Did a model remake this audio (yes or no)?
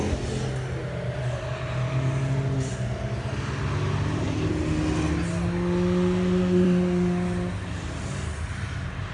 no